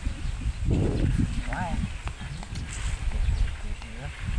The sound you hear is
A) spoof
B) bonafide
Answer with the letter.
B